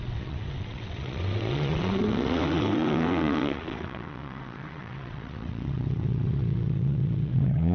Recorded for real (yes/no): no